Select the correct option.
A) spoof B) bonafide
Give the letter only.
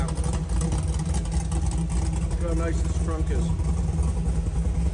B